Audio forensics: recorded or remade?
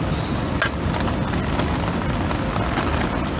recorded